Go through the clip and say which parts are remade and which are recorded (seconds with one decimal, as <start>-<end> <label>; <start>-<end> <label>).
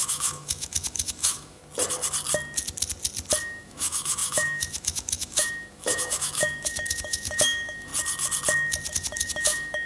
0.0-1.6 remade; 1.6-3.4 recorded; 3.4-7.9 remade; 7.9-8.9 recorded; 8.9-9.9 remade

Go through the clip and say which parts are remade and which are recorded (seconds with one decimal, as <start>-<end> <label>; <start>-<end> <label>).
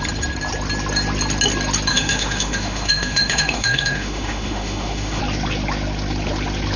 0.0-1.9 recorded; 1.9-5.2 remade; 5.2-6.8 recorded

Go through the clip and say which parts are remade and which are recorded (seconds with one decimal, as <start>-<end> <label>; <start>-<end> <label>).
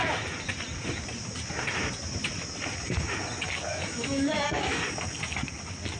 0.0-3.7 recorded; 3.7-4.8 remade; 4.8-6.0 recorded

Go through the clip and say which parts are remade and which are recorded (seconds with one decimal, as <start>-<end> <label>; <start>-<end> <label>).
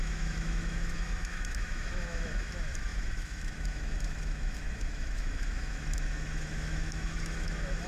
0.0-7.9 remade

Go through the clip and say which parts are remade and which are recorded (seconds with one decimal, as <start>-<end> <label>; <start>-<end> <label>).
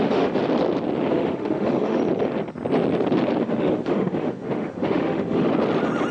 0.0-0.4 remade; 0.4-1.1 recorded; 1.1-2.0 remade; 2.0-3.4 recorded; 3.4-5.5 remade; 5.5-6.1 recorded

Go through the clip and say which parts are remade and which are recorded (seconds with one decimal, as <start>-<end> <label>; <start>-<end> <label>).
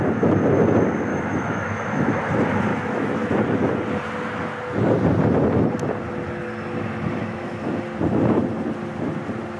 0.0-1.1 recorded; 1.1-2.2 remade; 2.2-2.7 recorded; 2.7-3.3 remade; 3.3-7.2 recorded; 7.2-7.7 remade; 7.7-9.6 recorded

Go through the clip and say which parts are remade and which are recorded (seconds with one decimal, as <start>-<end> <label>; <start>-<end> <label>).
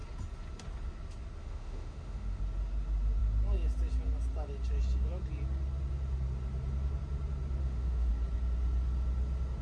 0.0-1.4 recorded; 1.4-2.4 remade; 2.4-7.6 recorded; 7.6-8.1 remade; 8.1-9.6 recorded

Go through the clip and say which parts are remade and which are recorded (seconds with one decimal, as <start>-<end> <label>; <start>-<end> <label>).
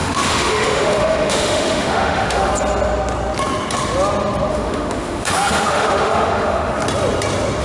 0.0-2.5 remade; 2.5-4.5 recorded; 4.5-6.8 remade; 6.8-7.6 recorded